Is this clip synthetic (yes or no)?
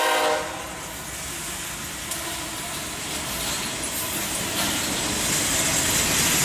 no